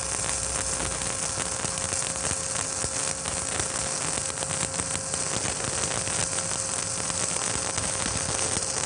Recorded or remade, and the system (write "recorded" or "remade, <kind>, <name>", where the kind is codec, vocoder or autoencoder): recorded